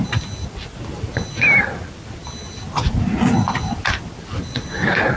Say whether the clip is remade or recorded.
recorded